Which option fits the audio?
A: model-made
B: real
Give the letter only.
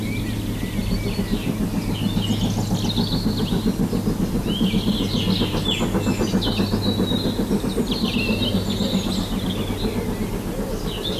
B